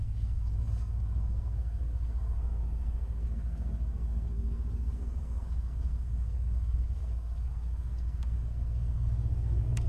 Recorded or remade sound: remade